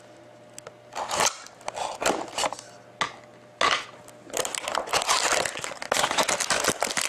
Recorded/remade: recorded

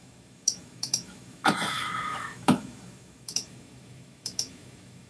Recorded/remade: remade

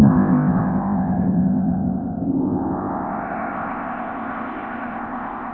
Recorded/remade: remade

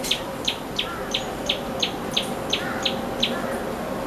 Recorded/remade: recorded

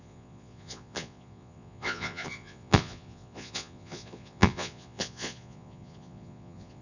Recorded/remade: remade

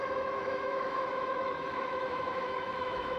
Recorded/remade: remade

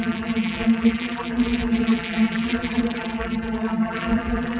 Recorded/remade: remade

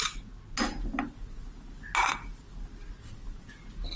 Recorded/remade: recorded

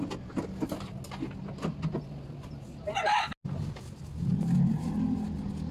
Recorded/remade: recorded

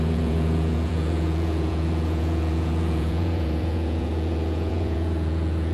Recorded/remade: remade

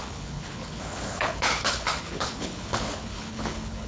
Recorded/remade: remade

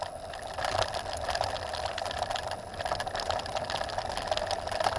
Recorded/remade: recorded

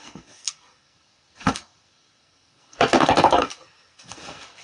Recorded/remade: remade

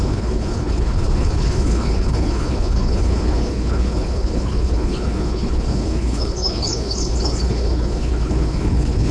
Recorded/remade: remade